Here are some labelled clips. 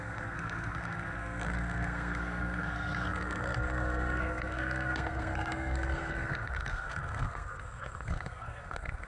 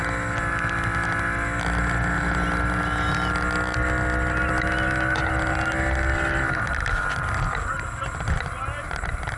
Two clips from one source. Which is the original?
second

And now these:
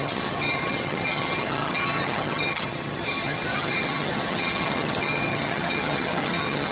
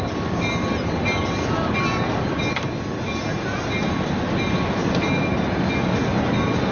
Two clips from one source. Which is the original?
second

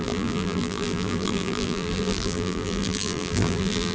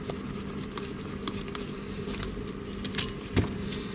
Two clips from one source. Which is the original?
second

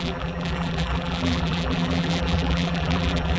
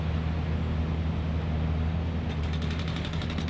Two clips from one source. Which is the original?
second